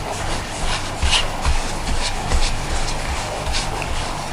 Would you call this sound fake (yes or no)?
yes